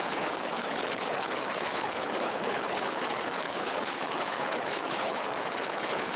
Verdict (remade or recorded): remade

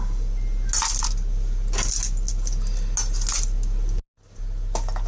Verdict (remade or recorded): recorded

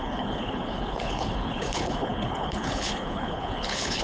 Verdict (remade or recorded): remade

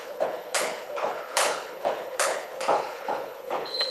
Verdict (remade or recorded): remade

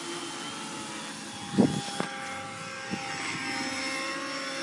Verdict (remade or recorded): recorded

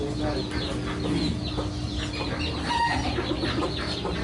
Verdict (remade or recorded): recorded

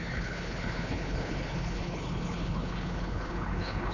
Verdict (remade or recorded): remade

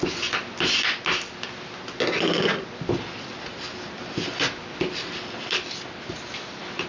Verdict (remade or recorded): recorded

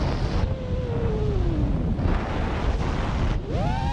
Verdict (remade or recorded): recorded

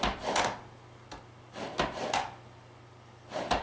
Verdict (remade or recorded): recorded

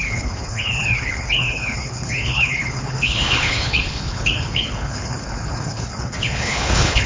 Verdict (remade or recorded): remade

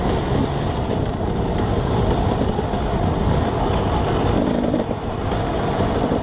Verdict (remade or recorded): recorded